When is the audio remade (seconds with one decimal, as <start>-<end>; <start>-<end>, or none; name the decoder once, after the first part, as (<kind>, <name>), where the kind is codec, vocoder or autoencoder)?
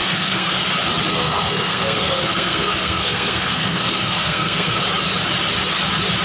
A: 0.0-0.6 (codec, SNAC); 1.1-4.8